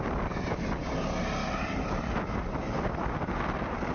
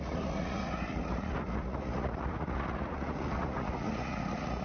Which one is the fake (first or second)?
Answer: second